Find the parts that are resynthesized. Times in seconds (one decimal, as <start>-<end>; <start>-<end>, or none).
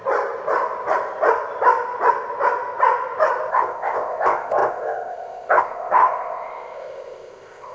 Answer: 3.5-7.7